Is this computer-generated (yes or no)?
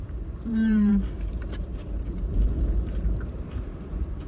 yes